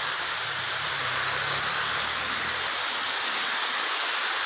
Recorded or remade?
recorded